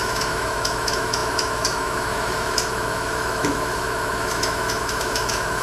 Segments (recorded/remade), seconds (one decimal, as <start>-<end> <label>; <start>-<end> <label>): 0.0-5.6 remade